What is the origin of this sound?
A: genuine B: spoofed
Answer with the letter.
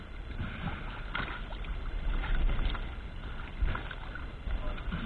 A